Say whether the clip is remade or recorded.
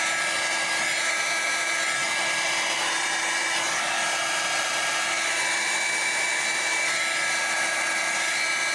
recorded